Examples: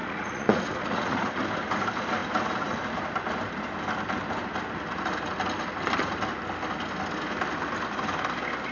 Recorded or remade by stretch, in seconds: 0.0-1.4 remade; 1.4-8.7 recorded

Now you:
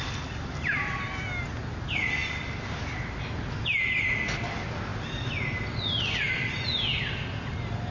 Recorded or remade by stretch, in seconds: 0.0-7.9 recorded

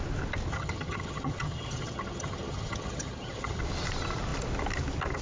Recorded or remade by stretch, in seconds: 0.0-0.5 recorded; 0.5-3.6 remade; 3.6-5.2 recorded

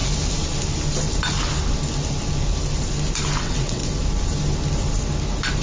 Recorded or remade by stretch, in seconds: 0.0-3.4 recorded; 3.4-3.8 remade; 3.8-5.6 recorded

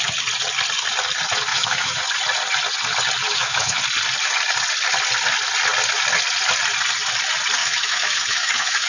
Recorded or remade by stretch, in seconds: 0.0-1.5 recorded; 1.5-2.0 remade; 2.0-3.3 recorded; 3.3-3.8 remade; 3.8-7.6 recorded; 7.6-8.9 remade

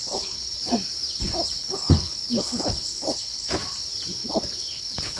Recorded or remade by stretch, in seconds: 0.0-0.7 remade; 0.7-1.6 recorded; 1.6-3.6 remade; 3.6-4.2 recorded; 4.2-5.2 remade

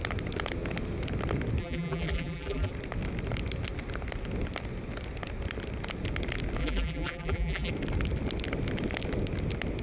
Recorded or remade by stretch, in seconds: 0.0-1.6 recorded; 1.6-2.7 remade; 2.7-6.6 recorded; 6.6-7.7 remade; 7.7-9.8 recorded

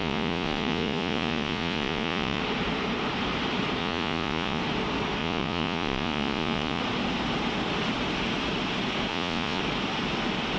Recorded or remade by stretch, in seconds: 0.0-2.4 remade; 2.4-3.8 recorded; 3.8-4.6 remade; 4.6-5.2 recorded; 5.2-6.8 remade; 6.8-9.1 recorded; 9.1-9.6 remade; 9.6-10.6 recorded